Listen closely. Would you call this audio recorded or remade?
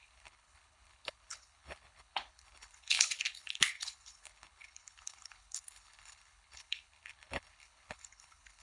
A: remade